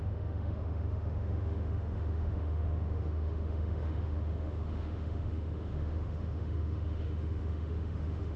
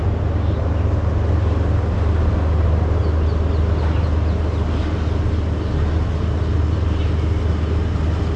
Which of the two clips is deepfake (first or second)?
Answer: first